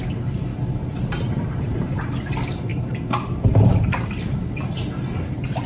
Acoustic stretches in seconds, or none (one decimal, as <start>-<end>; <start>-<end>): 0.0-0.5; 2.0-2.7; 4.4-5.7